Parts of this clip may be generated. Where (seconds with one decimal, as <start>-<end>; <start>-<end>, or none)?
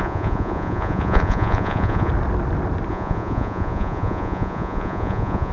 0.0-2.1; 2.9-5.5